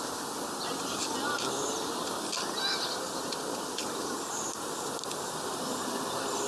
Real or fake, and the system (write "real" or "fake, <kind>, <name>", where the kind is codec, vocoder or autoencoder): real